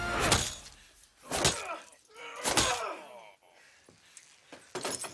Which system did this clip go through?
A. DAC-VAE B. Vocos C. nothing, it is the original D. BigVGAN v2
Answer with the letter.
C